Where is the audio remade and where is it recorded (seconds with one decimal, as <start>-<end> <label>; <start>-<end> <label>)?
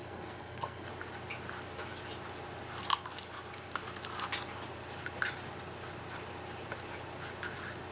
0.0-0.9 remade; 0.9-7.9 recorded